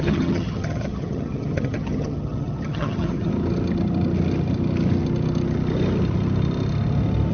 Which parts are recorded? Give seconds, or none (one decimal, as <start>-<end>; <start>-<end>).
3.3-7.3